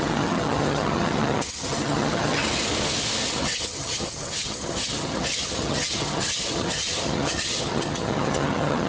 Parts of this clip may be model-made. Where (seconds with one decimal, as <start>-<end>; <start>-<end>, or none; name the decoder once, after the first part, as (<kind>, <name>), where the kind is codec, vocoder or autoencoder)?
0.0-2.4 (vocoder, HiFi-GAN); 3.3-8.9